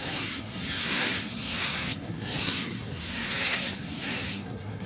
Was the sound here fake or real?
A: fake